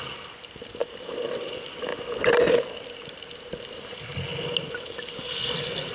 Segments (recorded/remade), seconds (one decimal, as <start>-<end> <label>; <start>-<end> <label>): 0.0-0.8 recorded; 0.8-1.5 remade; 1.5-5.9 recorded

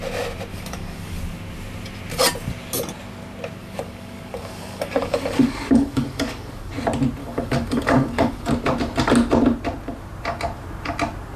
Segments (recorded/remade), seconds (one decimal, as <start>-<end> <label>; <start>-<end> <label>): 0.0-0.5 recorded; 0.5-1.2 remade; 1.2-3.6 recorded; 3.6-6.7 remade; 6.7-7.2 recorded; 7.2-8.5 remade; 8.5-11.4 recorded

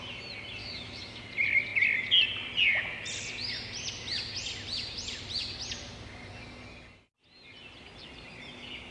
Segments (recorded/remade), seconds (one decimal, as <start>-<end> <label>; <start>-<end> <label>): 0.0-0.6 recorded; 0.6-1.2 remade; 1.2-8.9 recorded

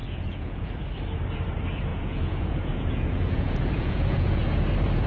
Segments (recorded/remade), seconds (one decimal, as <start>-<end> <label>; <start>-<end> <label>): 0.0-0.7 remade; 0.7-1.9 recorded; 1.9-4.4 remade; 4.4-5.1 recorded

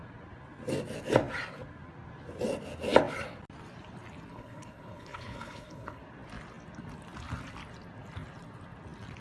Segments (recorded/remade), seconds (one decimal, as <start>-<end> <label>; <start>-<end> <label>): 0.0-4.3 recorded; 4.3-6.0 remade; 6.0-9.2 recorded

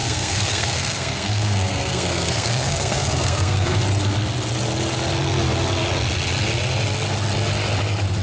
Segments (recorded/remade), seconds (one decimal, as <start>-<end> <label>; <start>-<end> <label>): 0.0-3.8 remade; 3.8-8.2 recorded

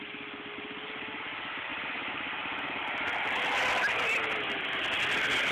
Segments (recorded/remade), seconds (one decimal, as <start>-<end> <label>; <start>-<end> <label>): 0.0-5.5 recorded